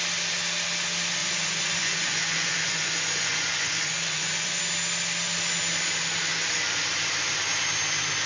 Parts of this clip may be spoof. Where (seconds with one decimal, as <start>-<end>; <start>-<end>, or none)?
1.2-4.6